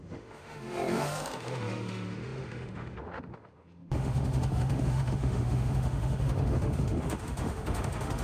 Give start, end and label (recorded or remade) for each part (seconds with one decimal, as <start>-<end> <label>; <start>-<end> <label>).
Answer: 0.0-8.2 remade